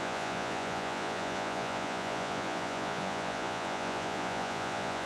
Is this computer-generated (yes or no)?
yes